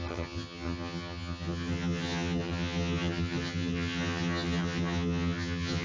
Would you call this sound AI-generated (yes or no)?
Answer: yes